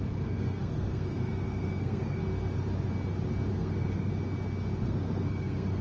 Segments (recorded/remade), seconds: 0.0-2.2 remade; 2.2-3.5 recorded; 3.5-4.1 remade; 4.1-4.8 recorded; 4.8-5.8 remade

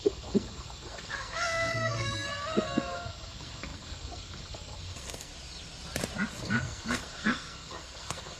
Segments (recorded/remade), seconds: 0.0-5.3 remade; 5.3-6.3 recorded; 6.3-8.4 remade

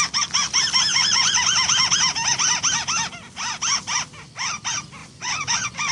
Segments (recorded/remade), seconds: 0.0-0.9 recorded; 0.9-1.4 remade; 1.4-5.0 recorded; 5.0-5.9 remade

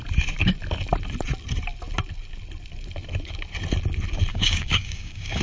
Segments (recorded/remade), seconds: 0.0-4.3 recorded; 4.3-5.4 remade

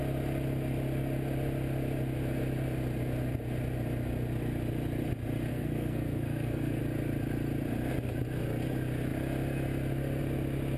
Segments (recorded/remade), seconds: 0.0-5.5 recorded; 5.5-6.8 remade; 6.8-10.8 recorded

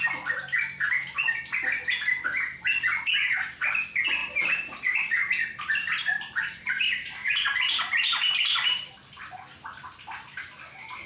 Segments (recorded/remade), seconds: 0.0-4.2 recorded; 4.2-9.2 remade; 9.2-11.1 recorded

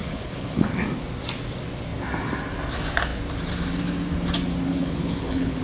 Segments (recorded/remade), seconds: 0.0-0.8 remade; 0.8-4.7 recorded; 4.7-5.6 remade

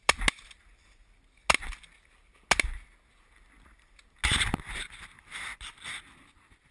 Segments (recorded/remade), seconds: 0.0-6.7 recorded